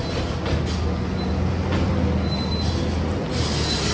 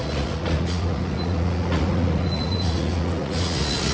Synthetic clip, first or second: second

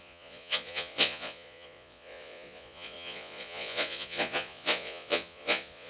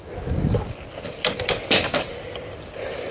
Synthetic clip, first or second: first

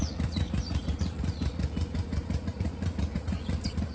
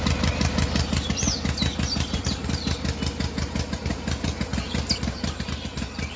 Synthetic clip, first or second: first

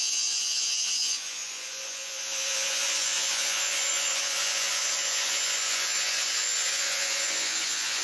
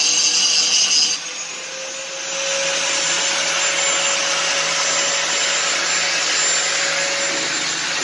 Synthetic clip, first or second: first